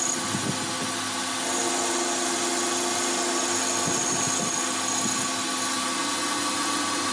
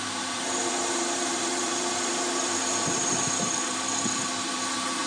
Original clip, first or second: first